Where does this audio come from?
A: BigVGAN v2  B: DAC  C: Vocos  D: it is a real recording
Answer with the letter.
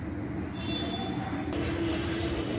D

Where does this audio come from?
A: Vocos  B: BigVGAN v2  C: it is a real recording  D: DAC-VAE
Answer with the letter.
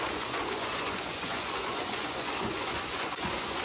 A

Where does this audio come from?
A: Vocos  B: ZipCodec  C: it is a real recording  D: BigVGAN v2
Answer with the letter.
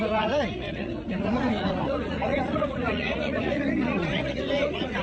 A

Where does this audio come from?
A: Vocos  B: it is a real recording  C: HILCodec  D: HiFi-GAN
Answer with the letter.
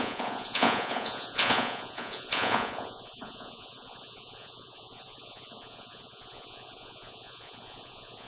A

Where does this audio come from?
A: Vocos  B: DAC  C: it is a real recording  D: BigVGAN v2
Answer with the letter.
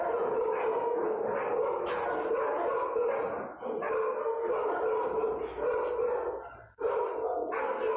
C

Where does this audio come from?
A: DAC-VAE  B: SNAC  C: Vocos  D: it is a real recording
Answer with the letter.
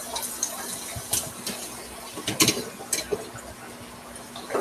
D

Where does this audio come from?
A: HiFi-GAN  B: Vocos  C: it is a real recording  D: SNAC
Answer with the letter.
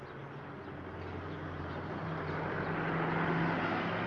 C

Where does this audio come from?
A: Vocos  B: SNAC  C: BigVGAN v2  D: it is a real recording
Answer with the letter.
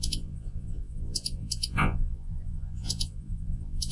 A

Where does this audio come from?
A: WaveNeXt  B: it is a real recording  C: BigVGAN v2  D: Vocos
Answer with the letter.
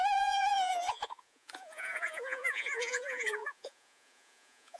D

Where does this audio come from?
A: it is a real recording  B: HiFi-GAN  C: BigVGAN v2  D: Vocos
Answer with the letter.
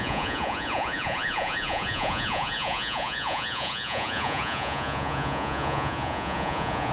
D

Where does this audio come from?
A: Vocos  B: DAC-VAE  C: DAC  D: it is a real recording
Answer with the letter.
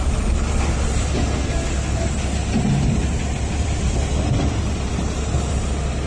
D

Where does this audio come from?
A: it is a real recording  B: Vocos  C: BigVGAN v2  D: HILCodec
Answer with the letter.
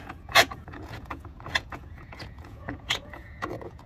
B